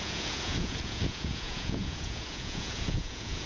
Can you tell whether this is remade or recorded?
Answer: remade